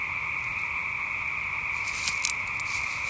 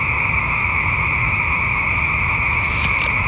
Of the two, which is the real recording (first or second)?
first